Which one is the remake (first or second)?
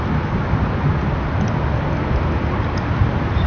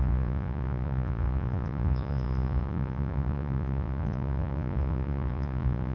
second